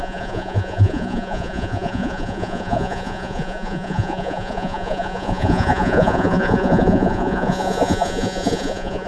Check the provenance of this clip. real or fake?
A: fake